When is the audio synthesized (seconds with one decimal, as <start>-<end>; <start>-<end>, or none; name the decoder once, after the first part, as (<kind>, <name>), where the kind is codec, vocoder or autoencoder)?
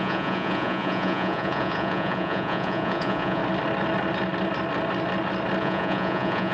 0.0-3.4 (vocoder, Vocos); 5.6-6.5